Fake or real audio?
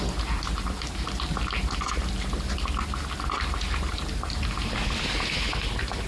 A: real